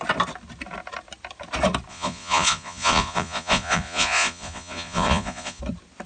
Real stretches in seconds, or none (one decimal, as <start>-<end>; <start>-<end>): 0.0-1.9; 5.6-6.1

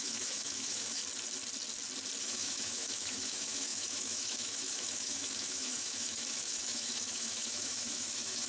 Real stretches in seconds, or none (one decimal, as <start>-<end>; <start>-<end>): 1.0-2.2

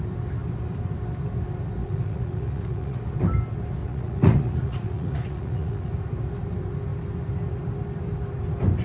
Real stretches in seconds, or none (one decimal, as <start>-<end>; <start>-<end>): 0.0-1.8; 3.0-3.8; 5.9-8.8

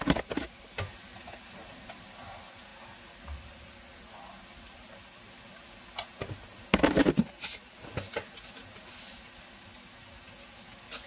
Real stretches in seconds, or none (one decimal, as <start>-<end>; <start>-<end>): 0.0-11.1

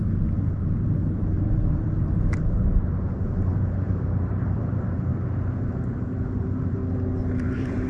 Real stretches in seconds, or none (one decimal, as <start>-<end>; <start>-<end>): 5.1-5.6; 6.8-7.4